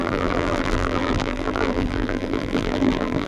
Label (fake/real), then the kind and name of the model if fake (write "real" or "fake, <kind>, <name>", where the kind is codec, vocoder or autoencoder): fake, vocoder, BigVGAN v2